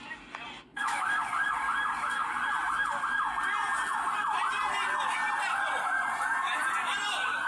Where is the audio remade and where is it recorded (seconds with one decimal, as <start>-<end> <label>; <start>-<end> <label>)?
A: 0.0-0.7 recorded; 0.7-1.2 remade; 1.2-7.5 recorded